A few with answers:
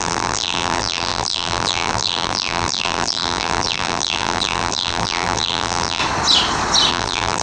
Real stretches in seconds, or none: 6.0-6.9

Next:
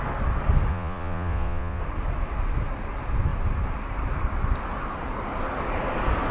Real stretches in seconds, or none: 0.0-0.7; 1.8-6.3

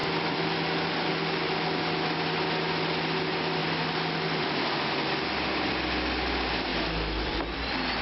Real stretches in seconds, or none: 1.1-3.6; 4.4-6.7

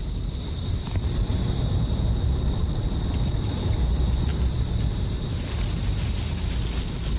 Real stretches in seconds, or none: 0.0-7.2